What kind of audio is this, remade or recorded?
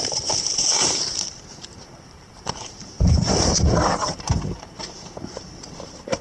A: remade